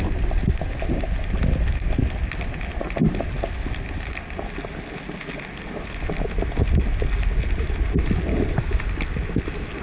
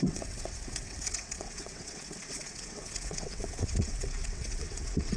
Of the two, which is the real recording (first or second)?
first